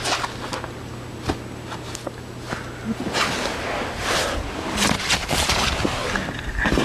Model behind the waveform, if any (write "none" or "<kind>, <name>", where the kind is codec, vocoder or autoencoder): none